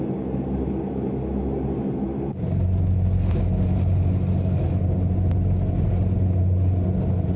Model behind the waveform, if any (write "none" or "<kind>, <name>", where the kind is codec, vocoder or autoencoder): none